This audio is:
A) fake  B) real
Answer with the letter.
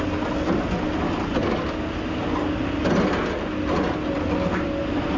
B